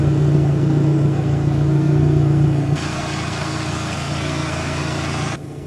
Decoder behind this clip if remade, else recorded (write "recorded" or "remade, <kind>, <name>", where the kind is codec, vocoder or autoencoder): remade, codec, SNAC